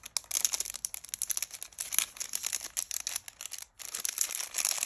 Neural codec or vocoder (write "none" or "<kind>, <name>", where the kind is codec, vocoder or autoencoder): none